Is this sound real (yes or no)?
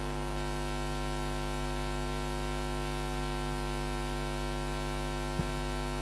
yes